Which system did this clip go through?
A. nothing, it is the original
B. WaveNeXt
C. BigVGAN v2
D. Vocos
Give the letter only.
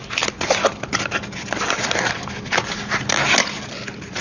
A